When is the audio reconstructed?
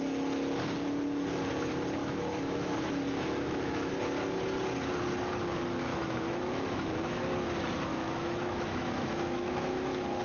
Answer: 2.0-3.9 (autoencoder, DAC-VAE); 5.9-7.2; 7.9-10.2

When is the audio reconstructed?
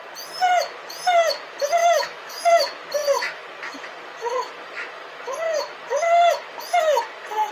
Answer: 1.8-2.5 (autoencoder, DAC-VAE)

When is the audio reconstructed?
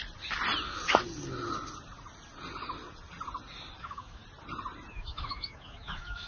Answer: 3.8-4.2 (autoencoder, DAC-VAE); 4.9-6.3